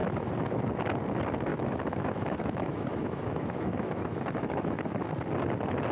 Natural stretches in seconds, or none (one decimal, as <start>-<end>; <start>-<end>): 0.6-1.5; 5.0-5.9